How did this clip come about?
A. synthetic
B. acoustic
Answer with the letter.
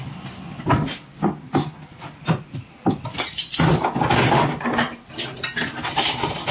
B